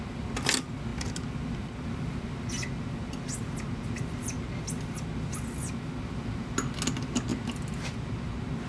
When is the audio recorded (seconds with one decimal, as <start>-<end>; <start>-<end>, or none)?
0.0-8.7